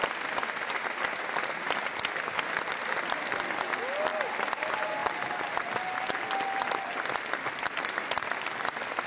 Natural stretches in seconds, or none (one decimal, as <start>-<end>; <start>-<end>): 0.0-9.1